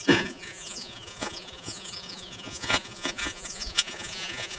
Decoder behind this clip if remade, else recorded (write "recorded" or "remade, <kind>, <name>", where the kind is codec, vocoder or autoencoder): remade, vocoder, Vocos